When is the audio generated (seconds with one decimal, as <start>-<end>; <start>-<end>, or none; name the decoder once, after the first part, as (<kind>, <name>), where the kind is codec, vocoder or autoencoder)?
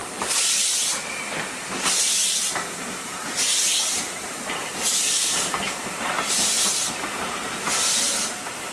0.0-0.9 (vocoder, BigVGAN v2); 2.3-6.1